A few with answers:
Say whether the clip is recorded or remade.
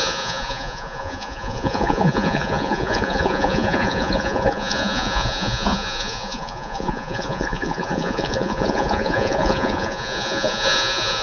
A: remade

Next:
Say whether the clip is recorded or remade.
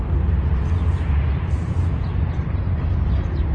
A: recorded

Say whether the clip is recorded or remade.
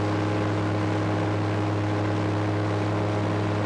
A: recorded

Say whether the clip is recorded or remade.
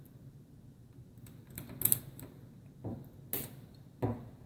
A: recorded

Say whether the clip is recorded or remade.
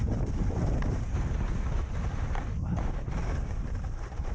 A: recorded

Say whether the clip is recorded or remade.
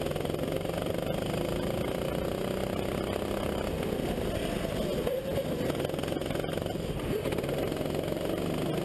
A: recorded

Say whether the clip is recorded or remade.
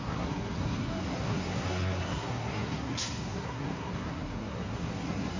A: remade